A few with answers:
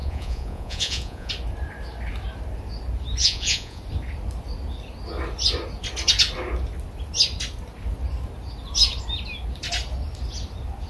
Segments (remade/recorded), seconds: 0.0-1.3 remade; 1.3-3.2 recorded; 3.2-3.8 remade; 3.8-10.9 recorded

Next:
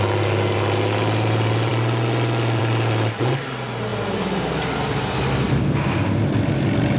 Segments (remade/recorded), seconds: 0.0-7.0 recorded

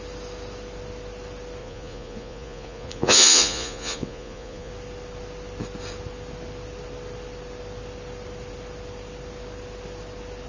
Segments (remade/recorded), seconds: 0.0-1.6 recorded; 1.6-4.7 remade; 4.7-10.5 recorded

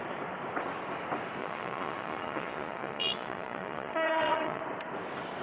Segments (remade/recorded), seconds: 0.0-1.4 recorded; 1.4-4.6 remade; 4.6-5.4 recorded

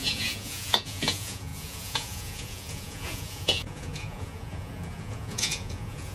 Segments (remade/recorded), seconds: 0.0-6.1 remade

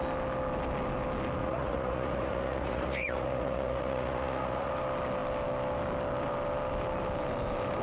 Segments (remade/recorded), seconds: 0.0-1.4 recorded; 1.4-4.7 remade; 4.7-7.8 recorded

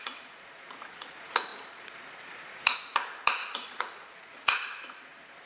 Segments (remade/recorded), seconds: 0.0-5.5 remade

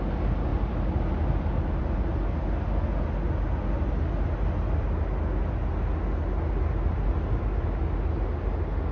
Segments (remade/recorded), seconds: 0.0-8.9 recorded